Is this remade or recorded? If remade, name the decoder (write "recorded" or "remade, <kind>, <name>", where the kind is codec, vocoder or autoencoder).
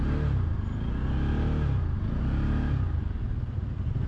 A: recorded